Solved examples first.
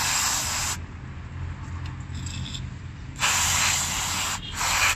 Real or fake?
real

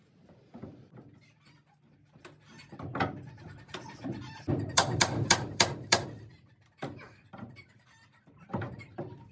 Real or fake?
fake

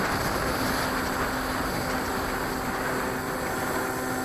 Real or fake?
real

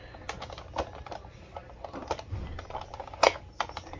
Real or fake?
real